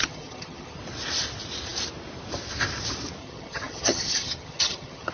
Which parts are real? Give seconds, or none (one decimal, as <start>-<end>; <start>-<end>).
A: 0.8-3.2